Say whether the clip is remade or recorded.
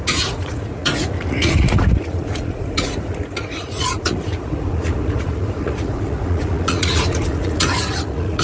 remade